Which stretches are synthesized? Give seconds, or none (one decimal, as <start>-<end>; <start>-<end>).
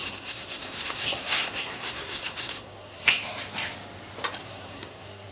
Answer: 0.0-3.2; 4.4-5.3